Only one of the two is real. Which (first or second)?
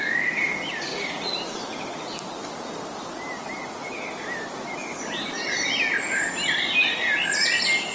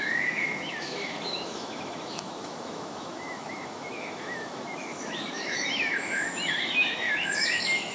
first